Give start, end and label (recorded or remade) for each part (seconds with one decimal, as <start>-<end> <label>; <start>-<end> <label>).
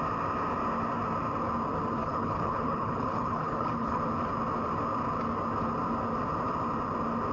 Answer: 0.0-2.0 recorded; 2.0-4.0 remade; 4.0-7.3 recorded